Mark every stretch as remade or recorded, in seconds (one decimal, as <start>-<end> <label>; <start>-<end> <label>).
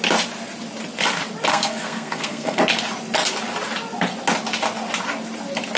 0.0-1.5 recorded; 1.5-2.6 remade; 2.6-5.8 recorded